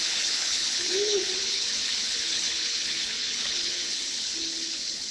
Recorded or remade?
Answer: remade